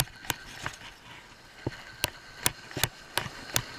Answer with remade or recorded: recorded